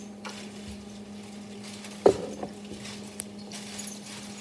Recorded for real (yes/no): yes